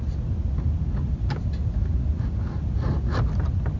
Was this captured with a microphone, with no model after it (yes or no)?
yes